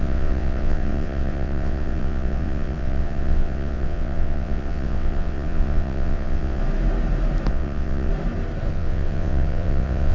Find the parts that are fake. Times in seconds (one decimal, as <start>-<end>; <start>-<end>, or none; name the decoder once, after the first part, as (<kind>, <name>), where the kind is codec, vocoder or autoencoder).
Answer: 0.0-6.6 (vocoder, WaveNeXt); 7.5-8.1; 8.7-10.1

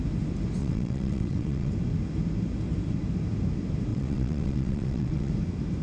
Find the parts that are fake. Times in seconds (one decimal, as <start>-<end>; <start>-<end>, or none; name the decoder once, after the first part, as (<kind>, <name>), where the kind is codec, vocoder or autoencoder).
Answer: 0.6-1.7 (vocoder, WaveNeXt); 3.9-5.3